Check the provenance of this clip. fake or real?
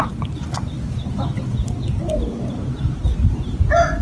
real